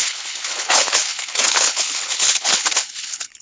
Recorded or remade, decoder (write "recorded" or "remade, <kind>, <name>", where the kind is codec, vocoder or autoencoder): remade, codec, HILCodec